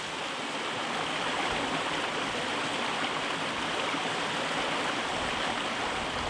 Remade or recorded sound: recorded